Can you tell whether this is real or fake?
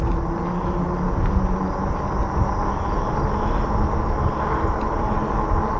real